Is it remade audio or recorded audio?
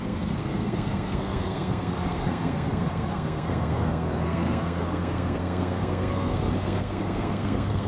remade